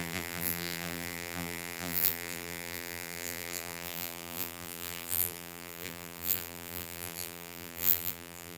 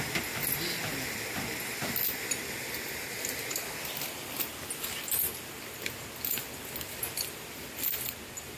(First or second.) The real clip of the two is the second